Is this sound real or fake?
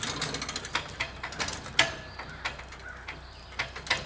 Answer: real